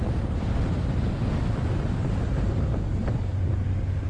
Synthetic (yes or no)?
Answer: no